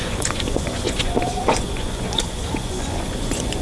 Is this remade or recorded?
remade